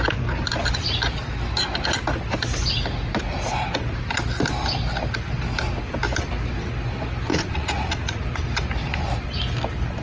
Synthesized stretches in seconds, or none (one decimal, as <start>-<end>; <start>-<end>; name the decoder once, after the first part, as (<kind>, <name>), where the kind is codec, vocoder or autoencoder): 7.3-8.2 (vocoder, Vocos)